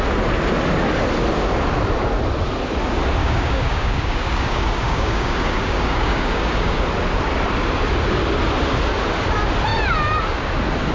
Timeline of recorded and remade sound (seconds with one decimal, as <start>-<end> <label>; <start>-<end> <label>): 0.0-3.2 recorded; 3.2-6.8 remade; 6.8-10.9 recorded